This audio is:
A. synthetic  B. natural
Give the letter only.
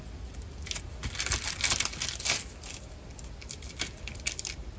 B